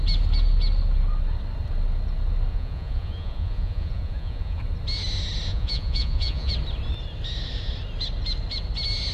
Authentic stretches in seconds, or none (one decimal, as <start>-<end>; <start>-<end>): 0.0-2.5; 4.6-5.5; 6.5-9.1